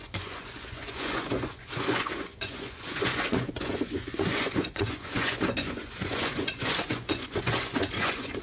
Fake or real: fake